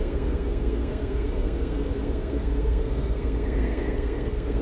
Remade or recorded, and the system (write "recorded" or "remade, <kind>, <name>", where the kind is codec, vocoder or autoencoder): remade, codec, SNAC